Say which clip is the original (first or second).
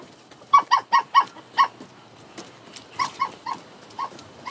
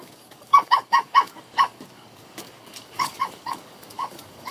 first